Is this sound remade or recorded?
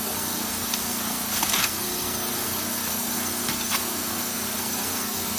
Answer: remade